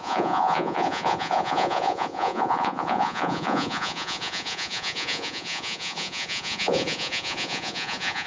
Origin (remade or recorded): remade